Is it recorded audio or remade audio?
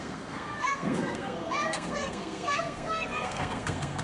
remade